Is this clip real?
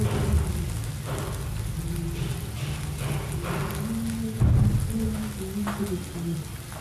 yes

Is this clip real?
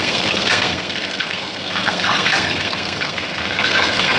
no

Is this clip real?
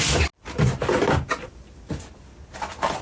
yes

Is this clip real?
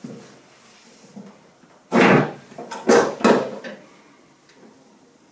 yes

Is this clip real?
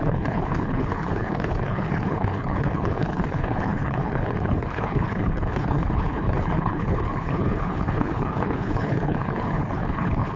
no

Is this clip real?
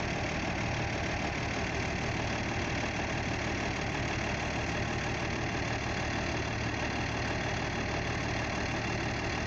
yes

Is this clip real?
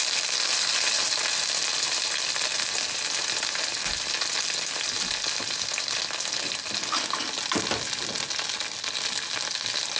yes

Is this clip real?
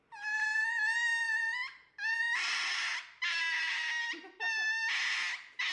yes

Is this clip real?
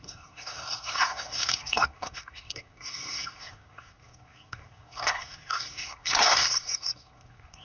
no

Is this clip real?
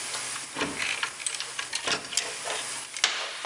yes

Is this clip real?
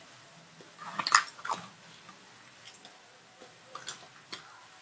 yes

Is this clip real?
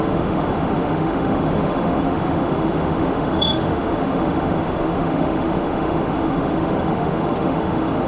no